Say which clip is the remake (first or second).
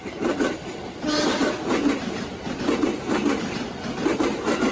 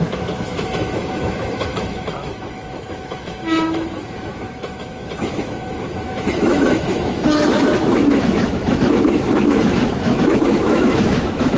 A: second